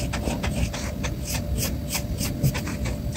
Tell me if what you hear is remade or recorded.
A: recorded